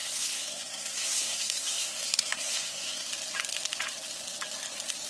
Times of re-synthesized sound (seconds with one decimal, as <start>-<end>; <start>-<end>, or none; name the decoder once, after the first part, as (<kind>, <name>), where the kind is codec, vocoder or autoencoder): 0.0-3.1 (codec, SNAC)